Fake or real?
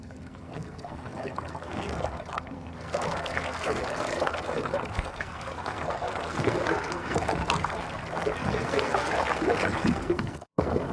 fake